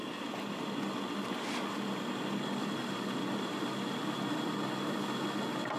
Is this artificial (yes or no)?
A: no